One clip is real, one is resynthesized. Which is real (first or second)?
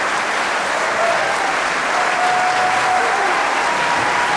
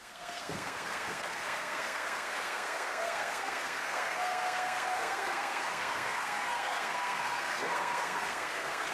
first